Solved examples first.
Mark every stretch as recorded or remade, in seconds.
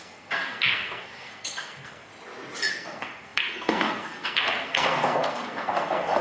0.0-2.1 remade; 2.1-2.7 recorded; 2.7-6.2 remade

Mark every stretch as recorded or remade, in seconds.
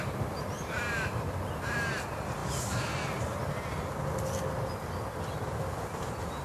0.0-6.4 recorded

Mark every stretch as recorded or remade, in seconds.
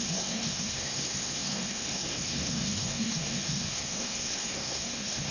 0.0-5.3 remade